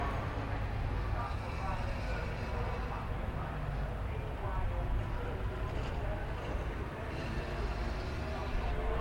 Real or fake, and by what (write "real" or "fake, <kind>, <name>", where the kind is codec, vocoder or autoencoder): real